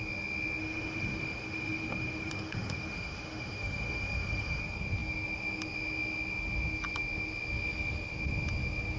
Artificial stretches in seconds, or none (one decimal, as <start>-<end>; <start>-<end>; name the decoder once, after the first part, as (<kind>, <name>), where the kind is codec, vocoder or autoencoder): 0.6-4.6 (autoencoder, DAC-VAE)